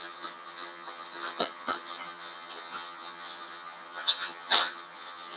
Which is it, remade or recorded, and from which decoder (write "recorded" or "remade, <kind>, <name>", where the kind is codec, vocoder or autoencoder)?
remade, vocoder, HiFi-GAN